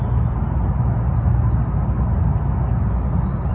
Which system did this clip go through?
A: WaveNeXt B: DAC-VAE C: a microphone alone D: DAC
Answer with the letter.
C